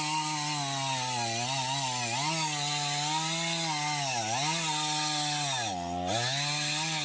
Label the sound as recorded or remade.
recorded